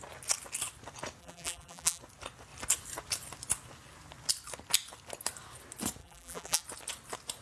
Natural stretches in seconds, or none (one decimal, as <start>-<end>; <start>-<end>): 0.0-1.2; 2.0-6.0; 6.6-7.4